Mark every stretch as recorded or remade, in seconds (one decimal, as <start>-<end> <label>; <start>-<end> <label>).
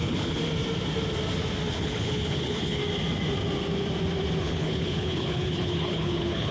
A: 0.0-0.4 remade; 0.4-1.7 recorded; 1.7-2.8 remade; 2.8-4.4 recorded; 4.4-6.5 remade